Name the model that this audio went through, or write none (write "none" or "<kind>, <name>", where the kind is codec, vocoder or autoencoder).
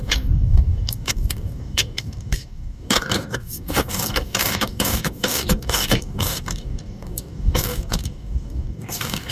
codec, DAC